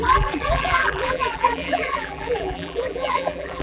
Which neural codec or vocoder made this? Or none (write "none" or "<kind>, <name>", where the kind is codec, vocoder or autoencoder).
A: vocoder, BigVGAN v2